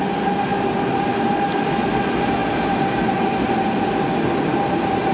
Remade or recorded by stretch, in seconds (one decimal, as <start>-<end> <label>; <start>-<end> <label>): 0.0-5.1 recorded